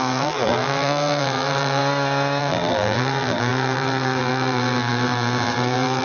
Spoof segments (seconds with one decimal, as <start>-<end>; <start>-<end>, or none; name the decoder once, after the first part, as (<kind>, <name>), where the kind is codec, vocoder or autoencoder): 0.0-1.8 (vocoder, BigVGAN v2); 2.4-6.0